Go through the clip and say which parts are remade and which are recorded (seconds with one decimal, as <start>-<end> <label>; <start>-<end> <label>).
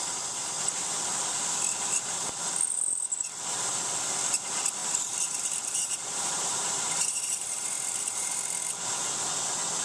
0.0-4.8 recorded; 4.8-8.4 remade; 8.4-9.8 recorded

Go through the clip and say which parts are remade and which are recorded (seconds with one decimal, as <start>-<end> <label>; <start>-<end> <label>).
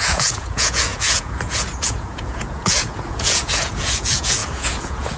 0.0-5.2 remade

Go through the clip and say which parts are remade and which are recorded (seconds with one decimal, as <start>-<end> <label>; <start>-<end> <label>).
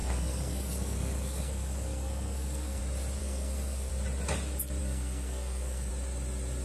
0.0-2.8 remade; 2.8-3.2 recorded; 3.2-3.9 remade; 3.9-4.8 recorded; 4.8-5.9 remade; 5.9-6.6 recorded